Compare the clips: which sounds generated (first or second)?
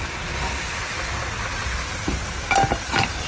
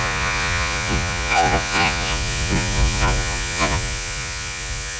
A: second